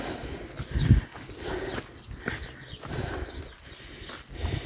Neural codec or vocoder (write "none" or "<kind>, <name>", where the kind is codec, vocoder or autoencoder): none